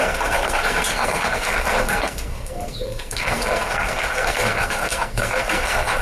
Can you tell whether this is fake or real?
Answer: fake